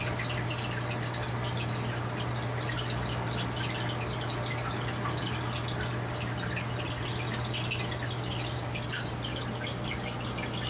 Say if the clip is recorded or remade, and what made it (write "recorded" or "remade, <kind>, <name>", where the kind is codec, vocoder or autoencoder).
recorded